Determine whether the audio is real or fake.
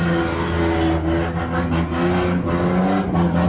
real